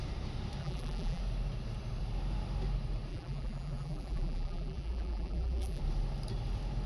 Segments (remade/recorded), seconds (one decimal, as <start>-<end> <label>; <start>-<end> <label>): 0.0-0.6 recorded; 0.6-1.2 remade; 1.2-3.1 recorded; 3.1-5.8 remade; 5.8-6.9 recorded